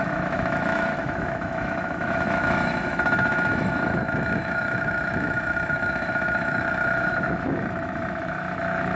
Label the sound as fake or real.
fake